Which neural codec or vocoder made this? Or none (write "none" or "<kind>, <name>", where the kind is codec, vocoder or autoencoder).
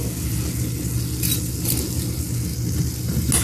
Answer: none